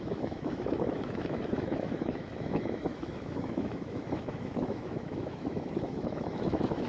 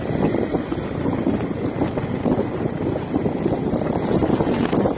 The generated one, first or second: first